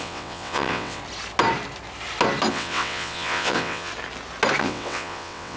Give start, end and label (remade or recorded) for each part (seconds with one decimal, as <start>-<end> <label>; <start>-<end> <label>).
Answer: 0.0-1.0 remade; 1.0-2.5 recorded; 2.5-3.9 remade; 3.9-4.6 recorded; 4.6-5.6 remade